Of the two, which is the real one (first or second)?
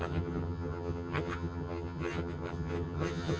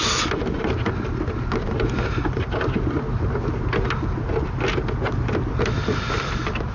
second